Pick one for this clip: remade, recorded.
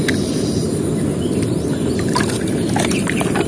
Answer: recorded